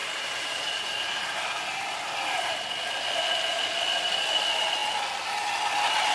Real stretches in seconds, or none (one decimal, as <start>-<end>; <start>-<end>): 2.7-6.1